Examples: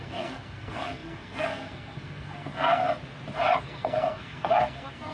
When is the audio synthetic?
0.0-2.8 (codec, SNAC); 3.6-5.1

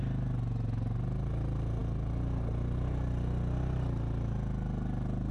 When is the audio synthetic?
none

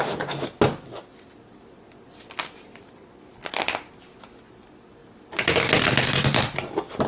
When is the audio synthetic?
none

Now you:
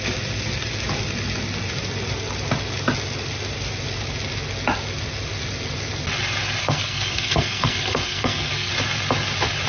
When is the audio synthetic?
6.6-8.7 (codec, SNAC)

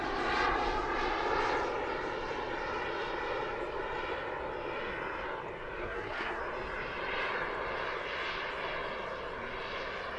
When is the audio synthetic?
5.8-6.4 (codec, SNAC)

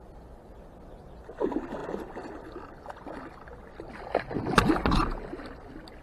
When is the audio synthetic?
none

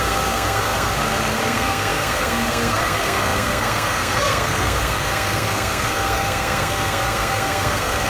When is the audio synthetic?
0.0-8.1 (codec, SNAC)

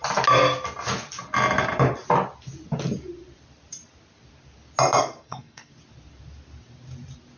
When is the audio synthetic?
5.0-5.7 (codec, SNAC)